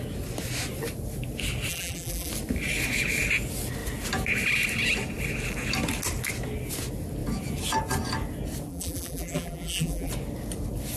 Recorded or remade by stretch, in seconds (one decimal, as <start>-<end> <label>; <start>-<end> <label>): 0.0-1.7 recorded; 1.7-2.3 remade; 2.3-8.7 recorded; 8.7-10.1 remade; 10.1-11.0 recorded